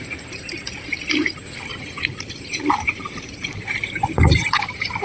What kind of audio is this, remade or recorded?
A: remade